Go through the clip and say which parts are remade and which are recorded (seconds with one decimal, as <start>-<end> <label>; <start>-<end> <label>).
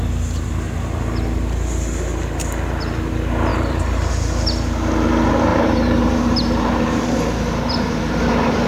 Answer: 0.0-3.5 recorded; 3.5-4.1 remade; 4.1-5.5 recorded; 5.5-8.7 remade